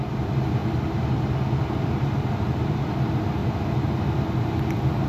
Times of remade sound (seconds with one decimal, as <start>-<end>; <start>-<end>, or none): 0.0-0.6; 1.8-3.4